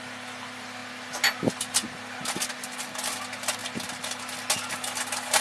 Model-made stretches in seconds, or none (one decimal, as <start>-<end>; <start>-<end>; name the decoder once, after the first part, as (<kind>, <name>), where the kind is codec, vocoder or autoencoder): none